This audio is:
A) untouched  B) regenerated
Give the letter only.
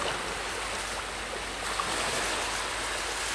A